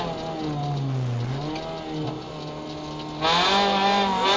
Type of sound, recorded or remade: recorded